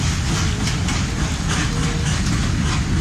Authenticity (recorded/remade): recorded